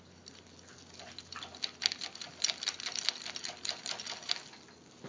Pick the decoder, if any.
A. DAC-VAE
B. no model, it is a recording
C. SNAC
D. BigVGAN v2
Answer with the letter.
B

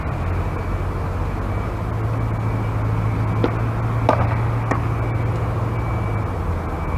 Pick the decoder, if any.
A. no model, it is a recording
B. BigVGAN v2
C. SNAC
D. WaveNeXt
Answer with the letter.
A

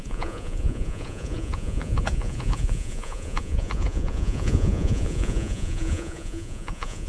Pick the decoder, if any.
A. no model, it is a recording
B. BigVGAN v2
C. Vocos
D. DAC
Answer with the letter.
C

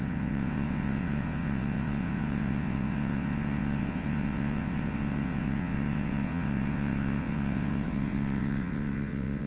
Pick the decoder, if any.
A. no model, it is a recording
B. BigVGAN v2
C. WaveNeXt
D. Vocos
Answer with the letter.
C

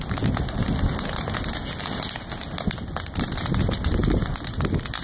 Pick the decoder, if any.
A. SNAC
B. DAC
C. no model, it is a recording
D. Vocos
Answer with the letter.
C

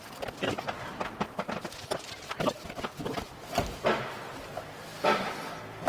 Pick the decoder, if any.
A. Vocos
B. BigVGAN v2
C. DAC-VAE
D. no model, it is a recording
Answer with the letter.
D